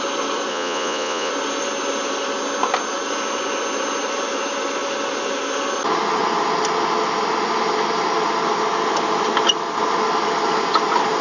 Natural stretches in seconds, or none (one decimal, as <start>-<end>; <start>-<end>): 0.0-0.5; 1.3-11.2